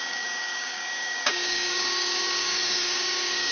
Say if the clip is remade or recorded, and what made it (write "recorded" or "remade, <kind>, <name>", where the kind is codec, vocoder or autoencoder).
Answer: remade, codec, DAC